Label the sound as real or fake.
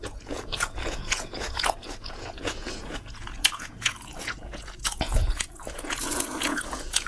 fake